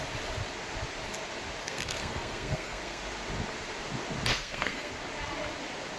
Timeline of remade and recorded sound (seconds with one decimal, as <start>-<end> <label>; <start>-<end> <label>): 0.0-1.6 recorded; 1.6-3.0 remade; 3.0-4.3 recorded; 4.3-4.9 remade; 4.9-6.0 recorded